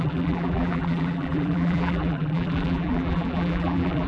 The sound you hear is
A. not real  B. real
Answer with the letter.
A